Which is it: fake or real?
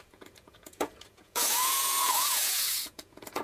fake